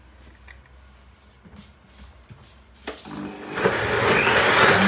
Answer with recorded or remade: recorded